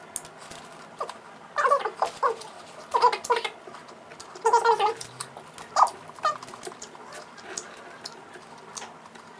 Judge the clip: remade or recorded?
recorded